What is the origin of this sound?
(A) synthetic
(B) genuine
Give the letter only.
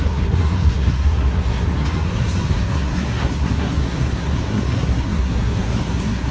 A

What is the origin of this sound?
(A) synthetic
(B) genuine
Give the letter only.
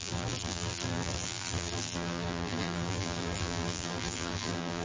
A